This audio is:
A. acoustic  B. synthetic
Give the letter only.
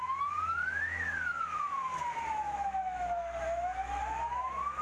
B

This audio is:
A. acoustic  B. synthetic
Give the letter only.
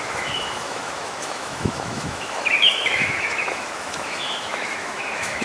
B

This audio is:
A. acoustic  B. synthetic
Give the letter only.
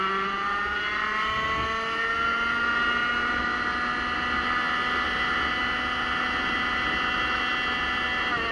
A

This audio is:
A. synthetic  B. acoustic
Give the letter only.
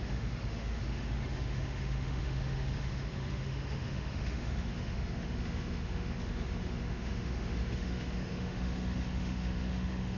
A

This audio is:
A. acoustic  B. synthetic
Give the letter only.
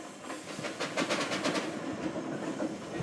A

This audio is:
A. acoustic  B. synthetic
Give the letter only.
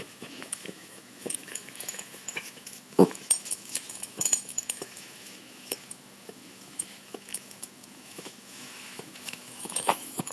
B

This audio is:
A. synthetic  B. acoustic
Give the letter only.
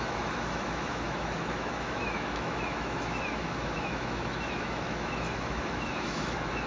A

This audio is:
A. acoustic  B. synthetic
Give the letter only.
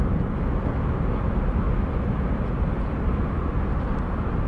A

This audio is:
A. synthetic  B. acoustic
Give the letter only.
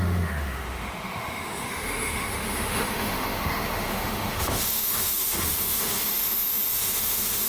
A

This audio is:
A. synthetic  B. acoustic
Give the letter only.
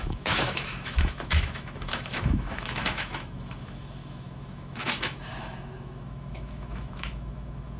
A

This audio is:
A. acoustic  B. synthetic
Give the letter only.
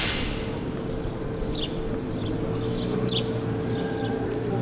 A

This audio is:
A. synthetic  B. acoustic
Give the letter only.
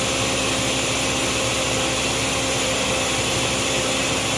B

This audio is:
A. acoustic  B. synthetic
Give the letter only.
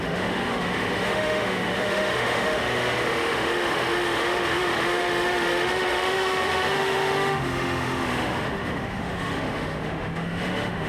B